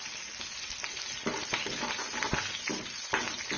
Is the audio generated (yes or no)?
yes